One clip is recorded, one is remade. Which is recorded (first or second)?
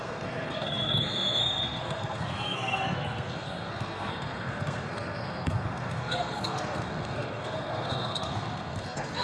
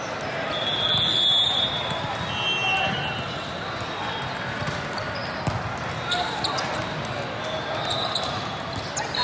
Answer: second